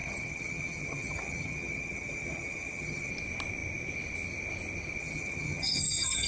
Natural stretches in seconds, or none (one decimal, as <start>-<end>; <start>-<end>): 3.1-5.0